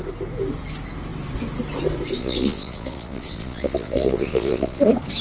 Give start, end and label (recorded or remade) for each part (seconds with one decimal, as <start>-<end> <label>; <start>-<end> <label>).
0.0-2.2 recorded; 2.2-4.8 remade; 4.8-5.2 recorded